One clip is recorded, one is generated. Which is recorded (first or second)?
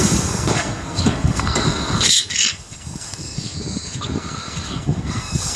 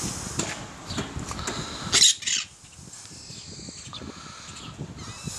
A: second